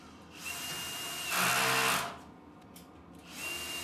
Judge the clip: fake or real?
real